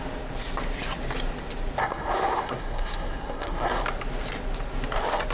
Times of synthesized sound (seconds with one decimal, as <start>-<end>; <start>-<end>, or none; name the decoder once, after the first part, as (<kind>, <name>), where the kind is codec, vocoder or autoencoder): 1.8-3.8 (codec, SNAC)